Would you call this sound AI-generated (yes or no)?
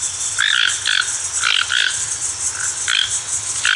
no